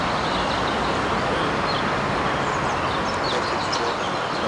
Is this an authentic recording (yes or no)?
yes